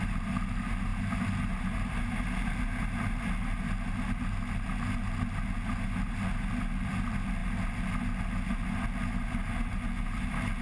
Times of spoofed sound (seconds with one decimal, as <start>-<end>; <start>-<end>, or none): none